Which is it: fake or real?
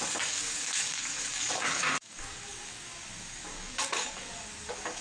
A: fake